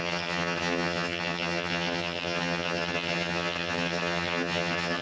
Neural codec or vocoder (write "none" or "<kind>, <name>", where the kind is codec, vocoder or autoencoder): vocoder, HiFi-GAN